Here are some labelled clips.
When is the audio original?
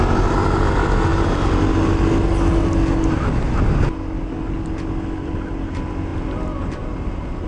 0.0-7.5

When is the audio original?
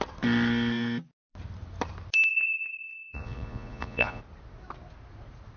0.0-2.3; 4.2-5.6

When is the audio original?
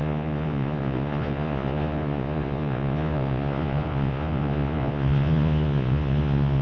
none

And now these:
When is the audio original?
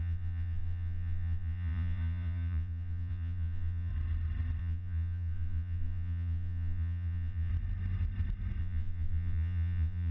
3.9-4.6; 7.5-8.6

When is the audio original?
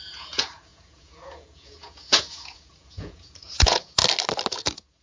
4.0-4.5